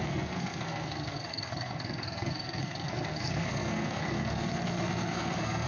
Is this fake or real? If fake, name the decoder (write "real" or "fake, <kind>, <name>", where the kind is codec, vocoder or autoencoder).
fake, codec, SNAC